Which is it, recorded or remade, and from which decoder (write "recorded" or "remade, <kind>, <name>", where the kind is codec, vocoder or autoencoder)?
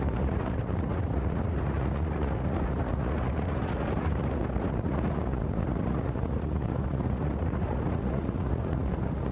remade, vocoder, Vocos